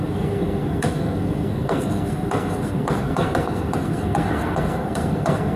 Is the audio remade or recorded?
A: remade